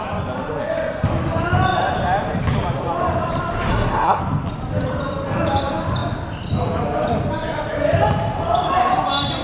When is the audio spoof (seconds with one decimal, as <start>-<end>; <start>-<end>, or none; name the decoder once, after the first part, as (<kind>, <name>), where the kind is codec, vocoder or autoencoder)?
3.7-4.2 (codec, SNAC)